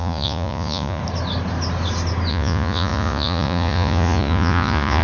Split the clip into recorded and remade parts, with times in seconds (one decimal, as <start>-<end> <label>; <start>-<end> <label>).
0.0-1.0 remade; 1.0-2.3 recorded; 2.3-5.0 remade